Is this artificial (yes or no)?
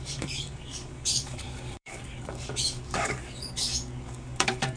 yes